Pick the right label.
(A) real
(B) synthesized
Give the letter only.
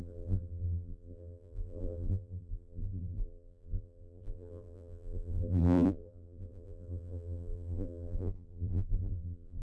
B